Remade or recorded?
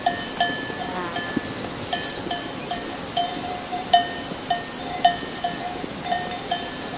recorded